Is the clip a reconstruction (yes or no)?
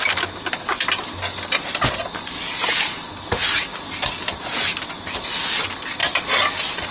no